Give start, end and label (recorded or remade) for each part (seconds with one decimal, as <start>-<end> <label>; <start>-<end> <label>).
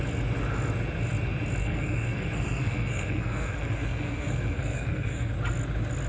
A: 0.0-1.6 recorded; 1.6-5.3 remade; 5.3-6.1 recorded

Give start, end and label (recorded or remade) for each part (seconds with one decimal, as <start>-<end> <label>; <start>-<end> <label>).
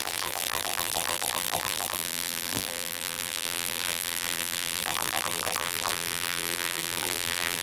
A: 0.0-7.6 remade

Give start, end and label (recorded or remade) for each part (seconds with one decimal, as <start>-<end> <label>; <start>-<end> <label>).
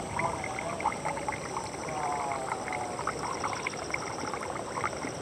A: 0.0-1.8 recorded; 1.8-5.2 remade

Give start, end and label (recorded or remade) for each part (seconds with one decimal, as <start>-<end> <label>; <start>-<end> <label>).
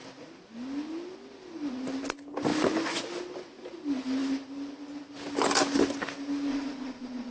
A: 0.0-6.5 recorded; 6.5-7.3 remade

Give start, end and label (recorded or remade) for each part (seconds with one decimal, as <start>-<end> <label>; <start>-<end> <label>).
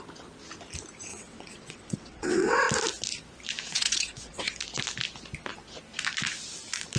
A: 0.0-1.1 recorded; 1.1-2.6 remade; 2.6-3.7 recorded; 3.7-4.5 remade; 4.5-7.0 recorded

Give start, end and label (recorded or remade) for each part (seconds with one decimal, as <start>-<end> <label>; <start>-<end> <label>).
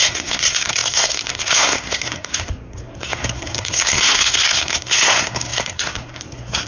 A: 0.0-6.7 remade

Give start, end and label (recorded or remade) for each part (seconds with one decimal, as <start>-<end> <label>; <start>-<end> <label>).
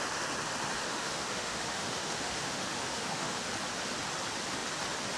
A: 0.0-0.9 recorded; 0.9-3.5 remade; 3.5-5.2 recorded